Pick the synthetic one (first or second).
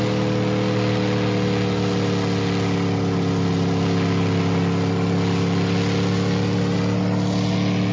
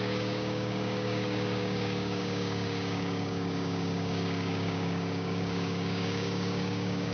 second